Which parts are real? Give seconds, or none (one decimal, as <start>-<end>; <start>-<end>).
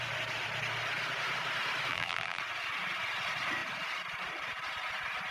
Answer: 0.0-1.9; 2.4-5.3